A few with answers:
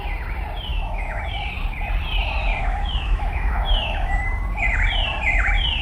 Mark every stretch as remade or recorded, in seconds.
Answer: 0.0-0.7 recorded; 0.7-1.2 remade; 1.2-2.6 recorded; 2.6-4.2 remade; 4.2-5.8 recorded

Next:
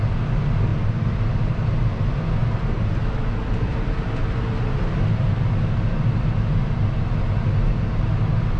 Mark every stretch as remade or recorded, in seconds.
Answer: 0.0-8.6 recorded

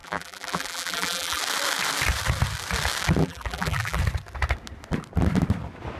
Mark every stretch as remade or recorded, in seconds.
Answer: 0.0-1.4 remade; 1.4-3.2 recorded; 3.2-4.0 remade; 4.0-6.0 recorded